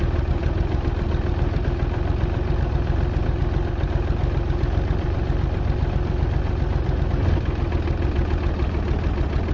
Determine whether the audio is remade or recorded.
recorded